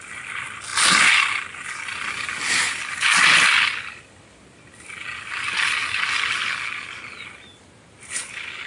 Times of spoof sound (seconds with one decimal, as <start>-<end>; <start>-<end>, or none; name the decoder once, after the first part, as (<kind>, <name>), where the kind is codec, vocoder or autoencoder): none